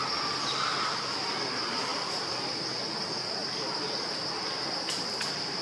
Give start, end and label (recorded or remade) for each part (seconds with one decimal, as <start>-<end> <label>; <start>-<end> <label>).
0.0-0.7 recorded; 0.7-1.4 remade; 1.4-1.9 recorded; 1.9-2.6 remade; 2.6-5.6 recorded